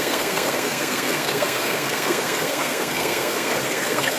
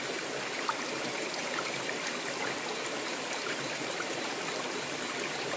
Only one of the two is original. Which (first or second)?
second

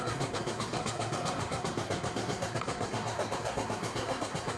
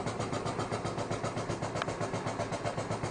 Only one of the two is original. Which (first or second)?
second